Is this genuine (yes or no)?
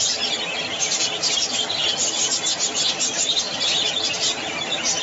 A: yes